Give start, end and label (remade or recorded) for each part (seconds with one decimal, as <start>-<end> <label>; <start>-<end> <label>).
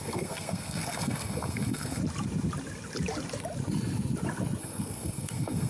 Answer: 0.0-2.0 remade; 2.0-4.6 recorded; 4.6-5.7 remade